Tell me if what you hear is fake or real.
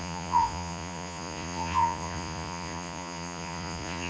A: fake